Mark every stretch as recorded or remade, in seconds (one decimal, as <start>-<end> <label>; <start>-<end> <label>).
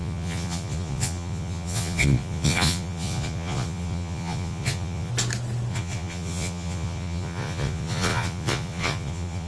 0.0-5.1 remade; 5.1-5.7 recorded; 5.7-9.5 remade